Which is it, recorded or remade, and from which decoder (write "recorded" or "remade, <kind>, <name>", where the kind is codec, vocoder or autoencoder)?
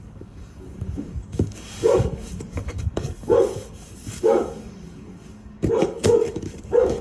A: remade, codec, DAC